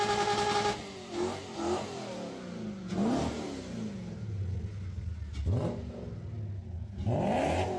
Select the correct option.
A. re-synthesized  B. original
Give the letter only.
B